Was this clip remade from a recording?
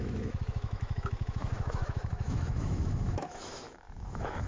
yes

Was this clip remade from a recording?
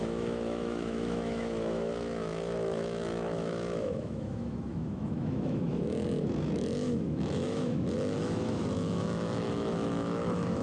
yes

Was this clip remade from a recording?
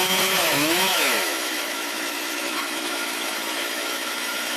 yes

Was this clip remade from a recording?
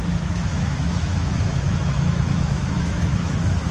yes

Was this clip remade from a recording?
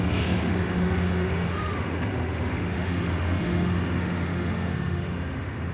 yes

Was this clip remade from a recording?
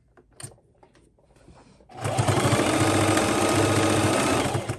no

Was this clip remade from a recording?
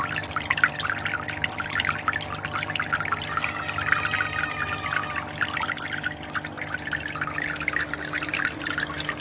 no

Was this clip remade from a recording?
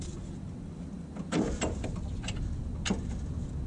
no